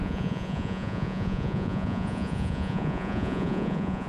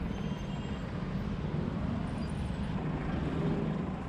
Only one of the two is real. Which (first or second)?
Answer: second